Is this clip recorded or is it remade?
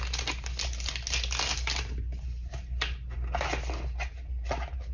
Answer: recorded